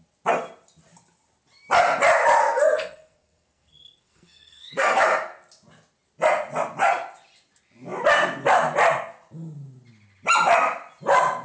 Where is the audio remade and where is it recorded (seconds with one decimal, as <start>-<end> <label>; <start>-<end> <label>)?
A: 0.0-2.4 recorded; 2.4-5.0 remade; 5.0-11.4 recorded